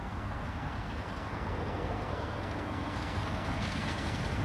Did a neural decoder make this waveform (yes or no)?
yes